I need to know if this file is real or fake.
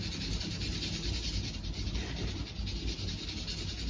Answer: real